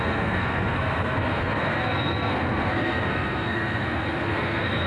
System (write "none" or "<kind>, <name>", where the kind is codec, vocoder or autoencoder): codec, SNAC